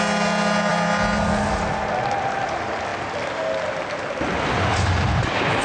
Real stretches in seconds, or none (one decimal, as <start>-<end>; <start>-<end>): 0.0-5.6